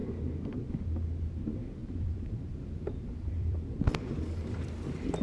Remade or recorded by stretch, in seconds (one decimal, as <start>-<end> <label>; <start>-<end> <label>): 0.0-1.8 recorded; 1.8-3.8 remade; 3.8-5.2 recorded